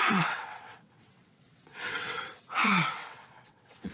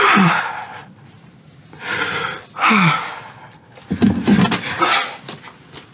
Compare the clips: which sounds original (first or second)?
second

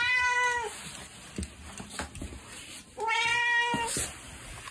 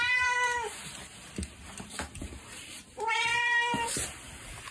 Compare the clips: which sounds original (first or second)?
first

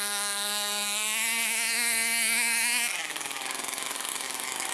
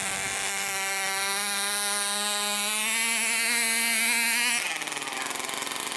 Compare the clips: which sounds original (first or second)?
second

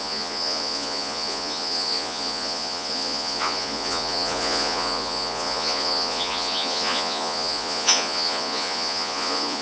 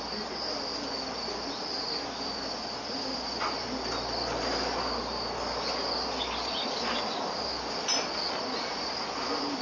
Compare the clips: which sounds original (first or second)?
second